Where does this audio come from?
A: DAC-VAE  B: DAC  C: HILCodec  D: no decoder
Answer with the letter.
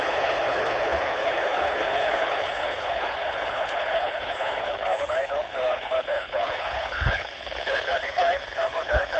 C